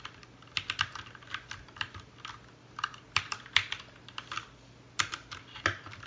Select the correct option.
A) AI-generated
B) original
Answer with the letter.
B